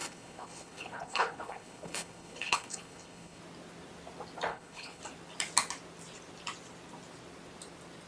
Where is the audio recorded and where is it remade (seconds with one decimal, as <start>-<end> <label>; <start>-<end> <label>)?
0.0-3.4 remade; 3.4-4.5 recorded; 4.5-5.0 remade; 5.0-8.1 recorded